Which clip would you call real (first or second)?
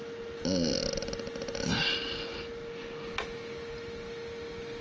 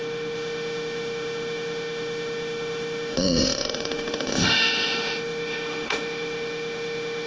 first